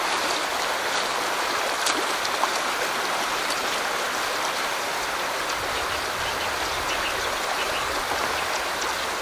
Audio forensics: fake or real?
real